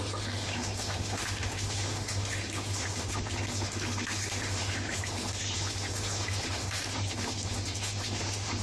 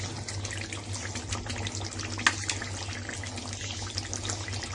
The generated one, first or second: first